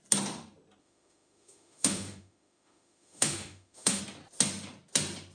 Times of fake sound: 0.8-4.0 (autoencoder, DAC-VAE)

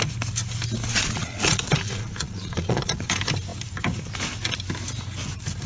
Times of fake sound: 0.9-3.1 (vocoder, Vocos)

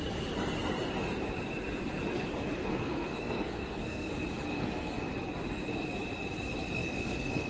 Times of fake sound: 2.7-4.1 (codec, SNAC); 4.5-5.1; 6.8-7.5

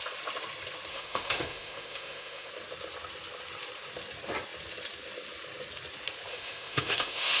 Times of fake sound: 0.9-2.5 (autoencoder, DAC-VAE); 6.3-7.4

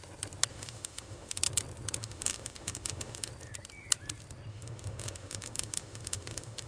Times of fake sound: 0.5-1.4 (autoencoder, DAC-VAE); 2.0-3.3; 4.5-6.7